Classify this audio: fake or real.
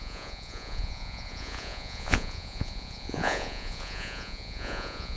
fake